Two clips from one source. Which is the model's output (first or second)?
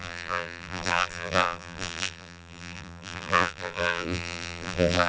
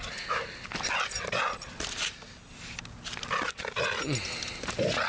first